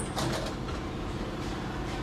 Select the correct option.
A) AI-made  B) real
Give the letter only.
B